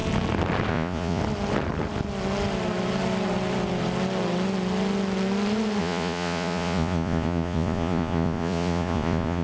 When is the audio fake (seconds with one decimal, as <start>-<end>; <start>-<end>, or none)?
0.7-1.2; 5.8-9.4